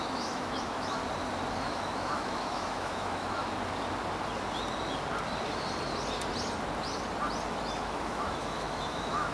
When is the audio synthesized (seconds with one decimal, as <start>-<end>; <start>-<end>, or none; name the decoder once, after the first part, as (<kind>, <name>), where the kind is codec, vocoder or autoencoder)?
0.0-1.0 (autoencoder, DAC-VAE); 1.5-3.4; 7.5-9.3